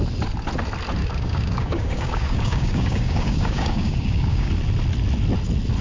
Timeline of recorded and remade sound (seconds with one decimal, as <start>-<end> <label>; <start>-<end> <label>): 0.0-1.0 recorded; 1.0-4.5 remade; 4.5-5.8 recorded